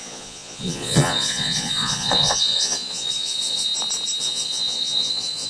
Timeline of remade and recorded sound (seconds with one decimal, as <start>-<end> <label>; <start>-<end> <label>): 0.0-3.7 remade; 3.7-4.2 recorded; 4.2-5.5 remade